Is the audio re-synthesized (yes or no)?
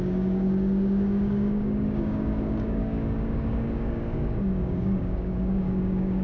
yes